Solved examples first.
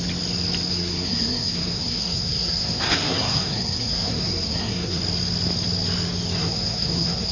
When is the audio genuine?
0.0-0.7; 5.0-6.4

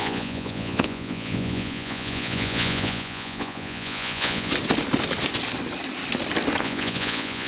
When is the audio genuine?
4.5-6.6

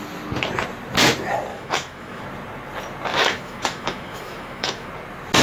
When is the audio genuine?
0.0-1.5; 2.2-3.1; 4.9-5.4